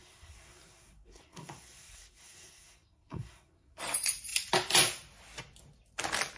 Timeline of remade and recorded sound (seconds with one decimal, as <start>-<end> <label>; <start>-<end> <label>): 0.0-3.8 remade; 3.8-6.4 recorded